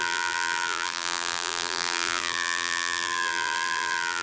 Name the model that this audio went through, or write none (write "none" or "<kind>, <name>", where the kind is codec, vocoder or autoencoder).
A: vocoder, BigVGAN v2